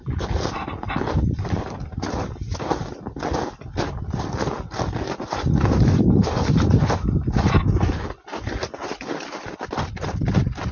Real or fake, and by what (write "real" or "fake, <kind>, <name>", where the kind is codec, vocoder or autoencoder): real